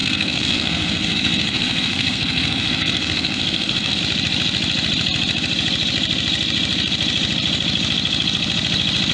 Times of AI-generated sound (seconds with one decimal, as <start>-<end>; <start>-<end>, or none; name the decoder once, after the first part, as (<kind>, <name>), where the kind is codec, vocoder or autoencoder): 0.0-4.0 (codec, SNAC)